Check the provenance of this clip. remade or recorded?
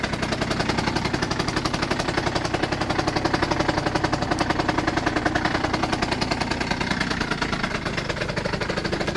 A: recorded